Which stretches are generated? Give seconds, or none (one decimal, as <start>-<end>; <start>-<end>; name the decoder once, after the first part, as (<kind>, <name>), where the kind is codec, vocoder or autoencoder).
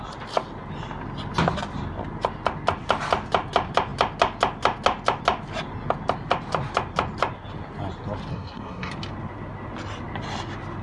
8.3-8.9 (codec, SNAC)